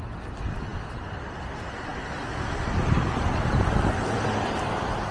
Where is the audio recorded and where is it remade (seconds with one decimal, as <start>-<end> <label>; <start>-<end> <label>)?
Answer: 0.0-5.1 recorded